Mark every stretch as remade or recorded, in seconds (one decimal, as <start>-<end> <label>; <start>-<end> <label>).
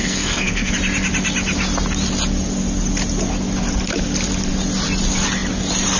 0.0-0.7 remade; 0.7-6.0 recorded